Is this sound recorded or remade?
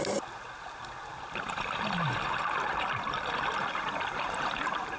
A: recorded